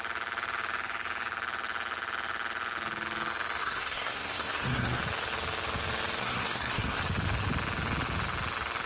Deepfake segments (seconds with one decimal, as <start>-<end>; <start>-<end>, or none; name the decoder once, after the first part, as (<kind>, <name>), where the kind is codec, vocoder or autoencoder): 3.6-5.0 (codec, SNAC); 6.2-7.0